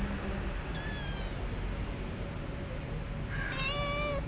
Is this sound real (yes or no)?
yes